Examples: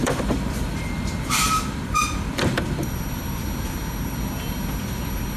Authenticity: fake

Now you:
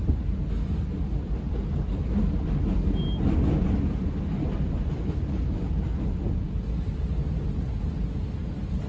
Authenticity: real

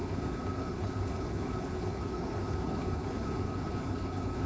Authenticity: fake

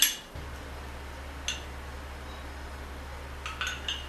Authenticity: real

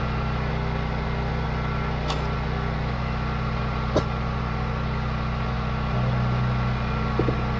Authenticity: real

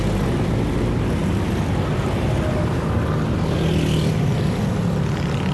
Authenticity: real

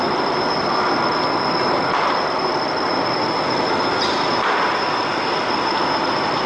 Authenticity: fake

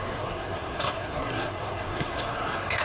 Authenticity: fake